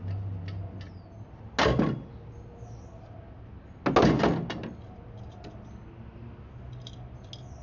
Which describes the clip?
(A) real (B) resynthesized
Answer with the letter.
A